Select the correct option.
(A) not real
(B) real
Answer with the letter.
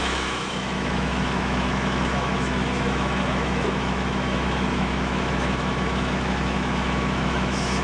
A